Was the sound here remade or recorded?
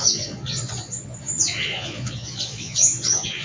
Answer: remade